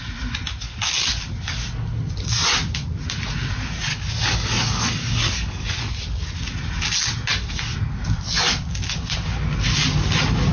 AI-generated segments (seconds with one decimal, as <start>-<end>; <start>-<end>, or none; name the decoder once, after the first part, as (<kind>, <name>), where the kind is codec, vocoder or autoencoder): 3.9-5.8 (codec, DAC)